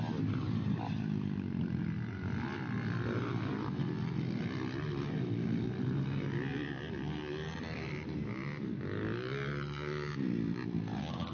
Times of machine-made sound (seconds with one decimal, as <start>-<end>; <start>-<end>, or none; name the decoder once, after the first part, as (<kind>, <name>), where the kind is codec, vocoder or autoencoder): none